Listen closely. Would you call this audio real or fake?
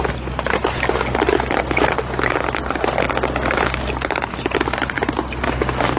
real